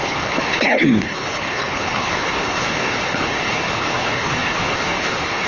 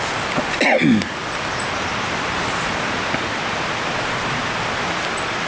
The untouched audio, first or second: second